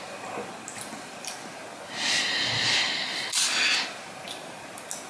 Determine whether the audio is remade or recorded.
recorded